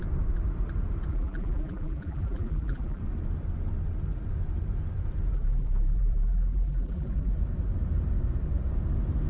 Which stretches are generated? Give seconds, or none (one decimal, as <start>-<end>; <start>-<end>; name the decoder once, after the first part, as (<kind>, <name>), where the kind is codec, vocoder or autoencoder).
1.1-3.0 (vocoder, BigVGAN v2); 5.3-7.3